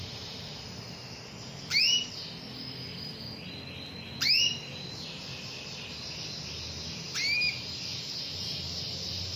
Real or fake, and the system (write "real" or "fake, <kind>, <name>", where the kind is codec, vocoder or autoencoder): real